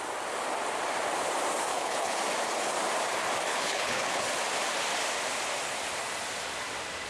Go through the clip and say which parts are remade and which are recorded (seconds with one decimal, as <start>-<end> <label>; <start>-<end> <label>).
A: 0.0-1.7 recorded; 1.7-2.2 remade; 2.2-3.5 recorded; 3.5-4.2 remade; 4.2-7.1 recorded

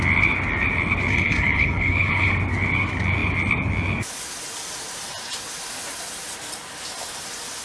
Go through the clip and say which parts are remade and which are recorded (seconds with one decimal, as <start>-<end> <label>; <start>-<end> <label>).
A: 0.0-1.1 recorded; 1.1-2.3 remade; 2.3-7.6 recorded